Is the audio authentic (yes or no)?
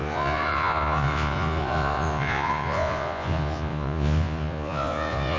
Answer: no